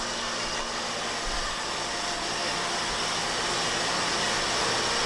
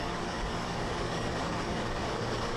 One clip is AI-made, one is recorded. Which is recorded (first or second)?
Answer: first